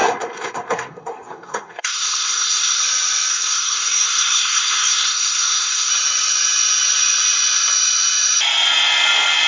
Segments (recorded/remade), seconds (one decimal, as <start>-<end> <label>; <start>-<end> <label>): 0.0-2.8 remade; 2.8-3.3 recorded; 3.3-5.9 remade; 5.9-9.5 recorded